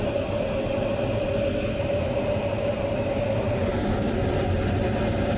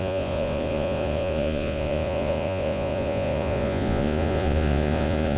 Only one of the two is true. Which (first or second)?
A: first